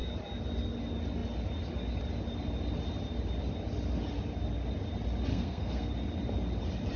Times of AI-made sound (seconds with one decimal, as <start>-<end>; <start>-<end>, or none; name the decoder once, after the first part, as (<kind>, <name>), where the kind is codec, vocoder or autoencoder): 5.3-5.9 (codec, SNAC)